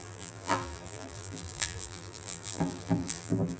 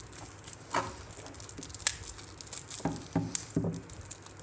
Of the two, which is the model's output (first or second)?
first